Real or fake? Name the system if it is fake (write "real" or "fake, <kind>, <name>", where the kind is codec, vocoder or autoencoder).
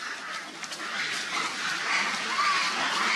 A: real